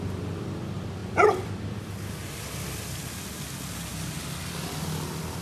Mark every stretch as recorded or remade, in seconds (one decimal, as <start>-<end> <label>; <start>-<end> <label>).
0.0-1.0 recorded; 1.0-3.1 remade; 3.1-5.4 recorded